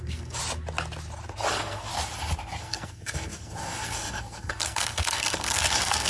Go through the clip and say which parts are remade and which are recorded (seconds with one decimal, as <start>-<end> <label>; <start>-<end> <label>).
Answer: 0.0-0.4 remade; 0.4-1.5 recorded; 1.5-1.9 remade; 1.9-2.6 recorded; 2.6-6.1 remade